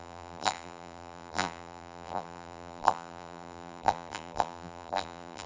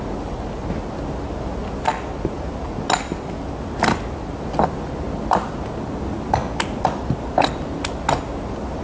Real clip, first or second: second